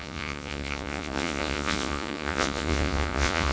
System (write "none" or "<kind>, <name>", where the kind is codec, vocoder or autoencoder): vocoder, Vocos